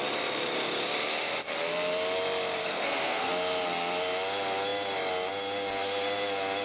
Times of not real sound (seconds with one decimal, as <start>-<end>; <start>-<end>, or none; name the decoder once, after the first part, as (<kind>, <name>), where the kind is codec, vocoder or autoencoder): 2.6-3.3 (codec, SNAC)